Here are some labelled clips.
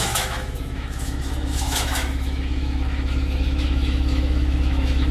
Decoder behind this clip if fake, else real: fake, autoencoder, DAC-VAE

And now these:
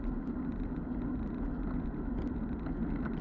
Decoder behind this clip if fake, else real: real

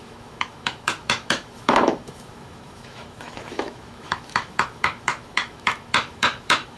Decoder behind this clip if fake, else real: fake, autoencoder, DAC-VAE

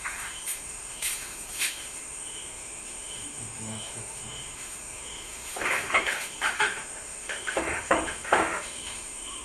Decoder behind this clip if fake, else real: fake, autoencoder, DAC-VAE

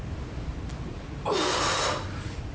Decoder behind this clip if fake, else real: real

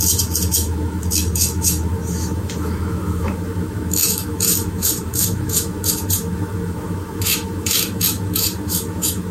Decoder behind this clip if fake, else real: fake, autoencoder, DAC-VAE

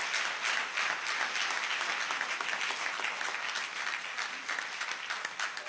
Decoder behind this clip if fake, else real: real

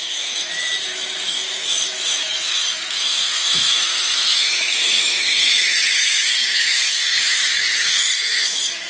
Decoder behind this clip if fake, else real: fake, autoencoder, DAC-VAE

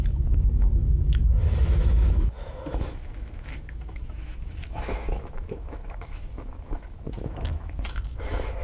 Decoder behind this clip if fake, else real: fake, autoencoder, DAC-VAE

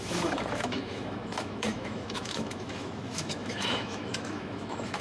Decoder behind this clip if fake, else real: fake, autoencoder, DAC-VAE